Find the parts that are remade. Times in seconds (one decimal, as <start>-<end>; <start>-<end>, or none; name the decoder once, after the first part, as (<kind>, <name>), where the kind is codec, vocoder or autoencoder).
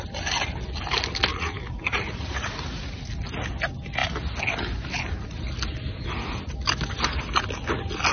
1.3-2.5 (vocoder, Vocos)